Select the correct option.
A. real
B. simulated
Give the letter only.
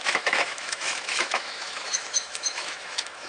B